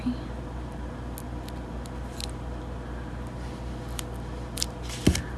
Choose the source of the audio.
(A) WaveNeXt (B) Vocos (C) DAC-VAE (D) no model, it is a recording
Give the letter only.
D